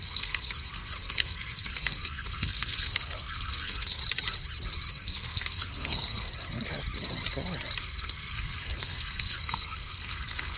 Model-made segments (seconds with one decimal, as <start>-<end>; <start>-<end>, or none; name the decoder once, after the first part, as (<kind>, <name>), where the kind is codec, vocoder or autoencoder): 0.0-4.0 (codec, SNAC); 4.9-6.3; 7.8-10.6